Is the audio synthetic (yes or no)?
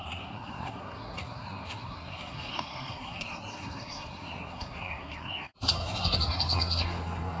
yes